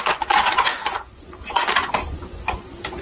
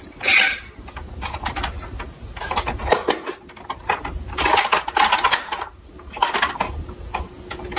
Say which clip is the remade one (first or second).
first